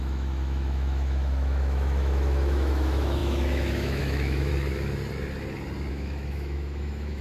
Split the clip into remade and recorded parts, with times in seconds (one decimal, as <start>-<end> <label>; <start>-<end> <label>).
0.0-4.5 remade; 4.5-5.9 recorded; 5.9-7.2 remade